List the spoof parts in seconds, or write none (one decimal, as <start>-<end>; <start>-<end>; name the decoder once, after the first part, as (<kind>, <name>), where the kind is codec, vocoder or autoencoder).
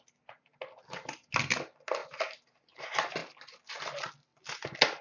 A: none